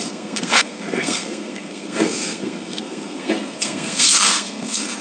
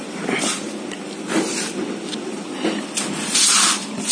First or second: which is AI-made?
first